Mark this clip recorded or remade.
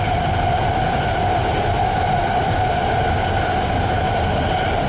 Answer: recorded